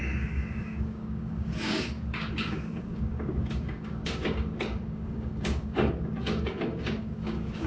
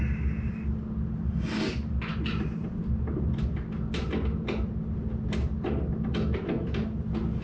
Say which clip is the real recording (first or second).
second